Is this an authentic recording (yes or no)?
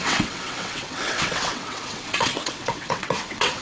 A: no